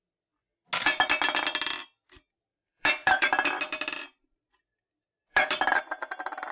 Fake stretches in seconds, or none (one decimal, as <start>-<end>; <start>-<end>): 2.5-4.5; 5.3-5.8